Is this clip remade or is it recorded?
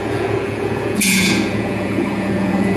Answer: remade